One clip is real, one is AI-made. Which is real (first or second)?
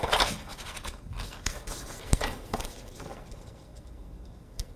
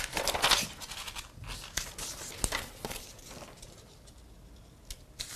second